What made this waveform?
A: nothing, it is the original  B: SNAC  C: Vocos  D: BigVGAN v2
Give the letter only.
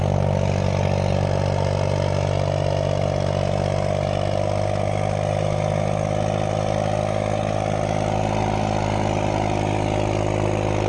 A